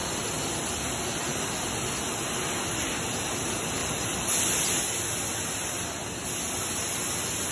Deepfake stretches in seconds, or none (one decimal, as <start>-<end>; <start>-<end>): 0.0-0.8; 3.8-4.4